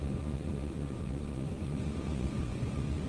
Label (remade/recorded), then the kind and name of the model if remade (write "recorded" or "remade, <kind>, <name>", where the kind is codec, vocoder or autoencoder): remade, vocoder, Vocos